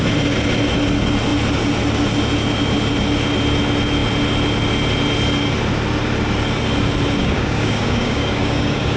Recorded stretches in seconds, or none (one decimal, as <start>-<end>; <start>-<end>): 0.0-7.2